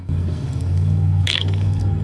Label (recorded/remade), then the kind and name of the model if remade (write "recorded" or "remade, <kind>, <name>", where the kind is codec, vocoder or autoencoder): remade, codec, SNAC